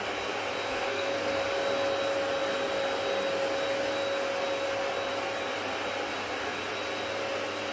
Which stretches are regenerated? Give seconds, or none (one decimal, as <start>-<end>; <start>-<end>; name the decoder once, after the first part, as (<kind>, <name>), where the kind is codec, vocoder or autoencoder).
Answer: 0.7-1.4 (codec, SNAC)